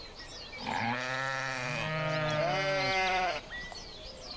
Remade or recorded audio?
recorded